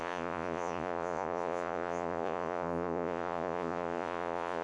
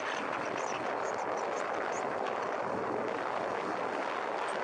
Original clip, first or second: second